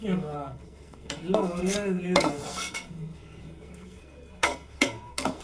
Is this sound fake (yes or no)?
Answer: yes